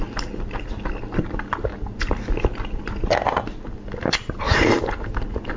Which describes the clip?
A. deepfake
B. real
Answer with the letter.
B